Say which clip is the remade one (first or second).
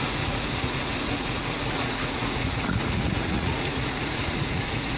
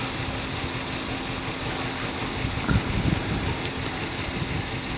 first